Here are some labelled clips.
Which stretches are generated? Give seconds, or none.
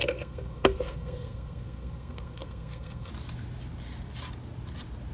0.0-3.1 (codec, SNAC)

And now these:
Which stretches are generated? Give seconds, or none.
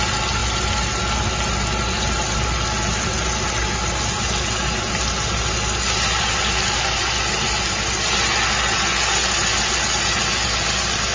none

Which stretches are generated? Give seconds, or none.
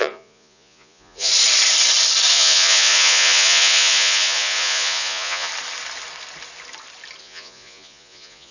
0.0-1.3 (vocoder, Vocos); 2.3-5.5; 7.2-8.5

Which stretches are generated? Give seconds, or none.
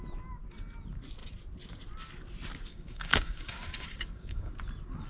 2.7-4.5 (codec, DAC)